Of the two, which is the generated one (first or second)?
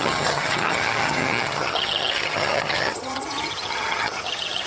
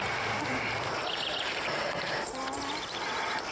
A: first